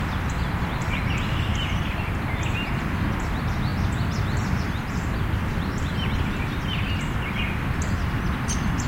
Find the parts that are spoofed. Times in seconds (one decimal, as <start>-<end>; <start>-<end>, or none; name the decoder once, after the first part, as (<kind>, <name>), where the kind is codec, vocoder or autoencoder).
1.5-2.7 (vocoder, BigVGAN v2); 3.7-8.9